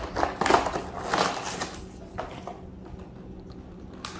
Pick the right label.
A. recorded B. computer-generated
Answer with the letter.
A